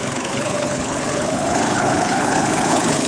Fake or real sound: fake